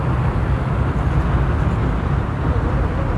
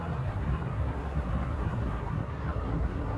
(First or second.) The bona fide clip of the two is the first